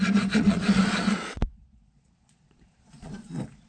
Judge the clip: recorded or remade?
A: remade